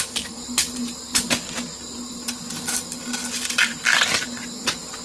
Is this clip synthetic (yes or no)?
no